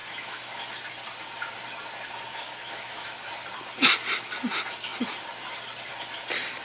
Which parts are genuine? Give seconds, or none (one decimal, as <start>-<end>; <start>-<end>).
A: 0.7-2.3; 3.3-6.6